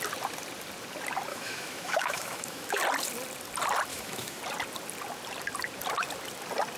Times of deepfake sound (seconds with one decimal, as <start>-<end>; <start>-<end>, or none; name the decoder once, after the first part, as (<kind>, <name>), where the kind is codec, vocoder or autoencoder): 1.3-2.8 (autoencoder, DAC-VAE); 3.9-4.4

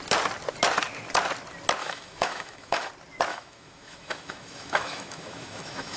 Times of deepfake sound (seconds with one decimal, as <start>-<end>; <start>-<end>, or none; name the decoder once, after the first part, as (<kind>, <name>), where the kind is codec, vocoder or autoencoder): 1.8-2.9 (autoencoder, DAC-VAE); 3.3-6.0

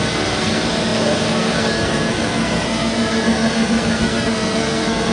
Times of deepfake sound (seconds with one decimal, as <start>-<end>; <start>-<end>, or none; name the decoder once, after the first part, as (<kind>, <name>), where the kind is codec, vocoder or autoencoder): 0.0-5.1 (codec, SNAC)

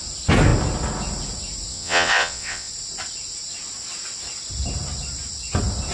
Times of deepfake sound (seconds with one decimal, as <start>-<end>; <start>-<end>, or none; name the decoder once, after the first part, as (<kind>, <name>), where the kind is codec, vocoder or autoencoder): 1.7-2.7 (vocoder, WaveNeXt)